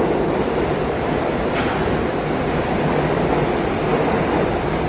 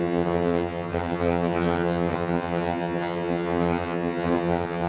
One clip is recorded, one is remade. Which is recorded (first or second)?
first